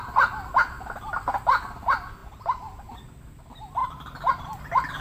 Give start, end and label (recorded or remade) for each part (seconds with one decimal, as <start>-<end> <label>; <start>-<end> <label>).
0.0-2.2 recorded; 2.2-2.9 remade; 2.9-3.8 recorded; 3.8-5.0 remade